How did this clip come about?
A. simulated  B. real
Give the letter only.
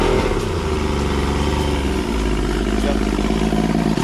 B